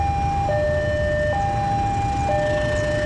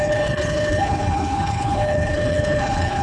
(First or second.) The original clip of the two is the first